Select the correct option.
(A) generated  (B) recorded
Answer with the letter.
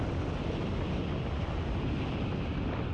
B